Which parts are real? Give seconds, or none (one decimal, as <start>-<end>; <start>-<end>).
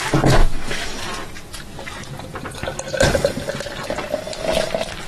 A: 0.0-0.4; 1.0-5.1